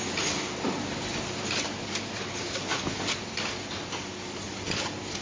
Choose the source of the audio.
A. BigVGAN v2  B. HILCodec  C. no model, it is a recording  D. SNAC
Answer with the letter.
C